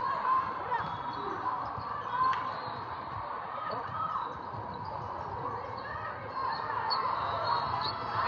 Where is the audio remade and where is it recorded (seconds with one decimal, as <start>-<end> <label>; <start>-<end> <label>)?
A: 0.0-3.4 recorded; 3.4-6.4 remade; 6.4-8.3 recorded